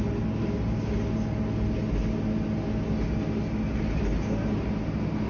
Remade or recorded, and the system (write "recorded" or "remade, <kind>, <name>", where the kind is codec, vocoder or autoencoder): recorded